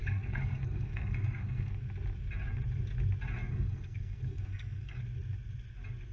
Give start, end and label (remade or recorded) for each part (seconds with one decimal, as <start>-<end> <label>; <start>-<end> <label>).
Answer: 0.0-1.8 remade; 1.8-3.5 recorded; 3.5-5.0 remade; 5.0-6.1 recorded